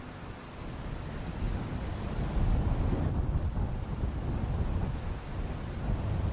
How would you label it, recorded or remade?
recorded